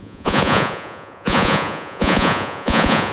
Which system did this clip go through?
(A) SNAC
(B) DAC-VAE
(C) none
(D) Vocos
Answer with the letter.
D